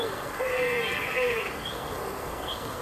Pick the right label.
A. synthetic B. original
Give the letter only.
A